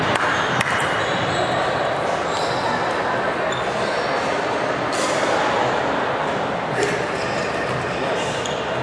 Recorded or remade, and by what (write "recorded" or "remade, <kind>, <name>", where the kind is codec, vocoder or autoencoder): recorded